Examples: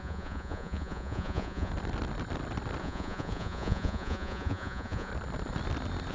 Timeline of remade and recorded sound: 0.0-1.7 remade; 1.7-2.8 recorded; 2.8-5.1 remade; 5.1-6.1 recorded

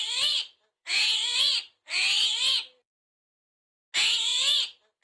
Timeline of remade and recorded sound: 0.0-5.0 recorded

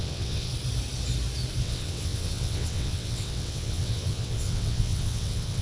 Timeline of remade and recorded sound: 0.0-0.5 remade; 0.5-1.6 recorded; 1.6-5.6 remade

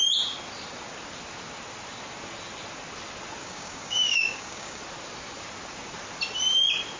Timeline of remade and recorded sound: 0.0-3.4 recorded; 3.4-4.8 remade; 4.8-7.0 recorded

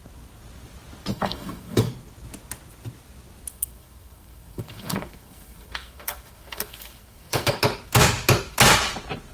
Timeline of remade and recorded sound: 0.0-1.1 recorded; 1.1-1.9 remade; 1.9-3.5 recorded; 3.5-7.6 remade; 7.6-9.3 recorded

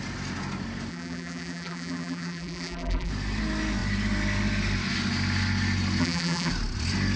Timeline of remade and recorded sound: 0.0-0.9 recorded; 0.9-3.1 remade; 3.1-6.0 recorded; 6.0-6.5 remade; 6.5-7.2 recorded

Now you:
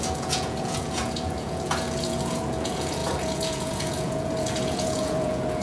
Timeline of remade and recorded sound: 0.0-5.6 remade

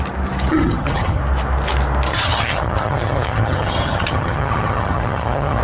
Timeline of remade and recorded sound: 0.0-0.5 recorded; 0.5-1.2 remade; 1.2-2.1 recorded; 2.1-5.6 remade